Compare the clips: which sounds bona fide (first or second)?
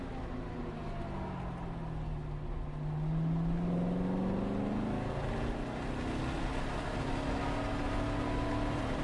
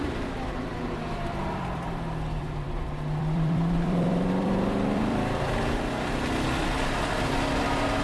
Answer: first